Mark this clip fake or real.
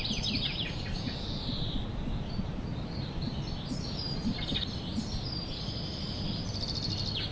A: real